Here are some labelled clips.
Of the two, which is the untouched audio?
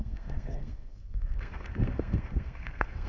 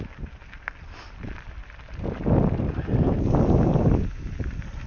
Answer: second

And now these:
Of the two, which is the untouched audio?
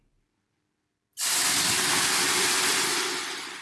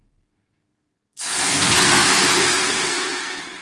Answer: first